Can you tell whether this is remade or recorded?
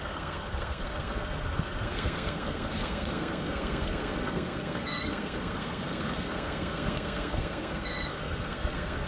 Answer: remade